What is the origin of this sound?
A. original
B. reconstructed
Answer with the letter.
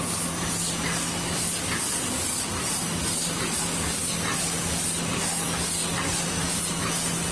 A